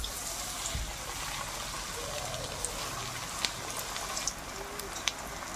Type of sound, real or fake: real